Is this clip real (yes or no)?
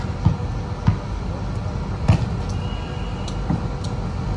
yes